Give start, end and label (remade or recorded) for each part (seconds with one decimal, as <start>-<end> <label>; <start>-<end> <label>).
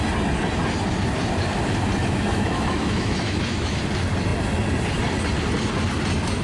0.0-2.0 recorded; 2.0-3.8 remade; 3.8-6.4 recorded